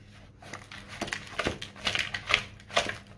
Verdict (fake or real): real